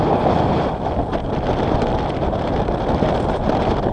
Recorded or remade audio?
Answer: recorded